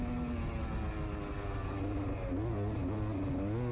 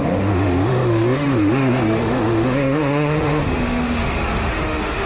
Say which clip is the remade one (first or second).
second